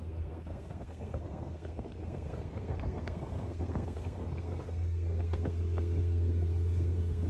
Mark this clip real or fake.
fake